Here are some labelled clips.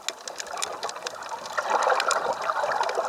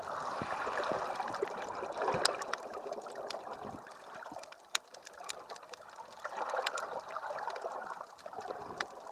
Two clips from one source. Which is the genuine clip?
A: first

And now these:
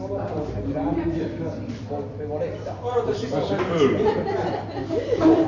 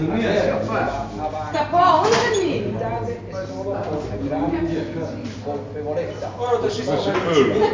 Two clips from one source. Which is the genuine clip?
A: second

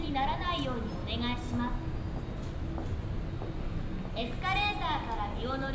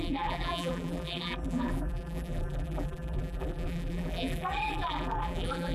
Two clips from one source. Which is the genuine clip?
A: first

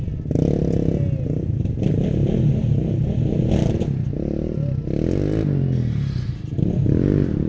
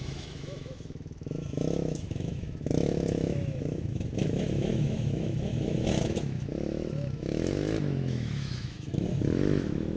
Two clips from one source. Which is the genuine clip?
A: first